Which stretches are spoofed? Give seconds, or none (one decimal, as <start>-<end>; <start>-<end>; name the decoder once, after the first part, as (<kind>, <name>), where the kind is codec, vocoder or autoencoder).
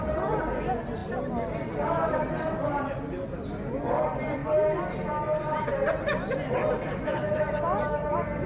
none